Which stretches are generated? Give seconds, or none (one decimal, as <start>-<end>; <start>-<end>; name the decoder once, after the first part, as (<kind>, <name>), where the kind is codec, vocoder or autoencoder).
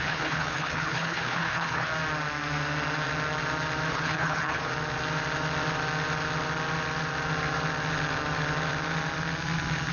0.0-1.9 (codec, HILCodec); 3.9-4.7